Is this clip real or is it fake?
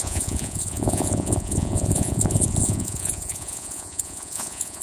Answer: fake